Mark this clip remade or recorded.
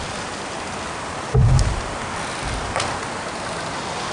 recorded